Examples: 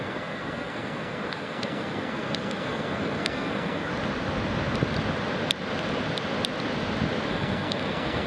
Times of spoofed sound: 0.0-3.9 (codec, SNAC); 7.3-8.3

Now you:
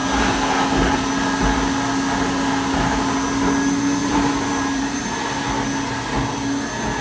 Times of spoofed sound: 4.0-4.9 (vocoder, BigVGAN v2)

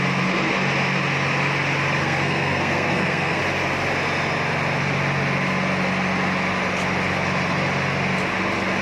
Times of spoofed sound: 2.0-3.4 (codec, SNAC)